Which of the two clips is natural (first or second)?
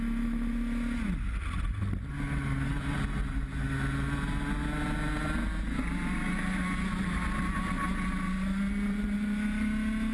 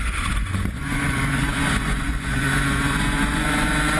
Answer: first